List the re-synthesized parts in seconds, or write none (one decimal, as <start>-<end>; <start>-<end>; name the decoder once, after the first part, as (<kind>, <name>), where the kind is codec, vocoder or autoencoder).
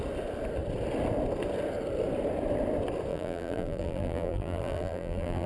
3.1-5.5 (vocoder, BigVGAN v2)